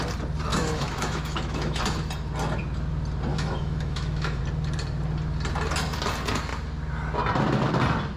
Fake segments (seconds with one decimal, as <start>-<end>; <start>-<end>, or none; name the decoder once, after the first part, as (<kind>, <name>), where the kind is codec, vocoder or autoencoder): 0.5-1.8 (autoencoder, DAC-VAE); 3.3-4.4